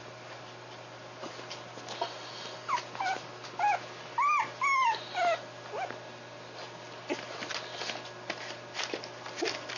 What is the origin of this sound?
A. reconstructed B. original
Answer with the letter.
B